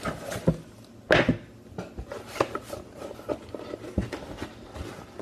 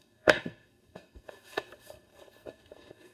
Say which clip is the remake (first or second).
second